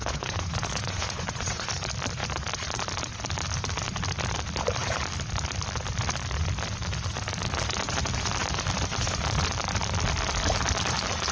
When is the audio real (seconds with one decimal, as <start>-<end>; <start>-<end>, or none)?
1.7-11.3